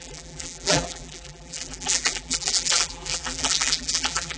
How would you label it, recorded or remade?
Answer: remade